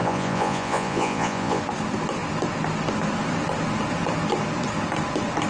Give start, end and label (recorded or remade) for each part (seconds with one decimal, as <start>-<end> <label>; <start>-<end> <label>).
0.0-1.6 remade; 1.6-5.5 recorded